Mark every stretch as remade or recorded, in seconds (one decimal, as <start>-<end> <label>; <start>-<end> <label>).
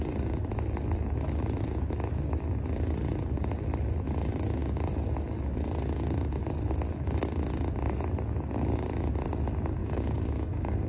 0.0-9.8 recorded; 9.8-10.9 remade